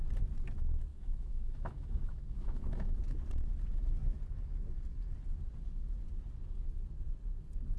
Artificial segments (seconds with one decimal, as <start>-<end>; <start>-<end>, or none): 0.9-3.0